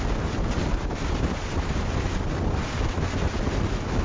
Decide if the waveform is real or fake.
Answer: real